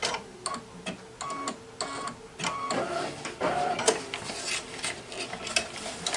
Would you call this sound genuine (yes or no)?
yes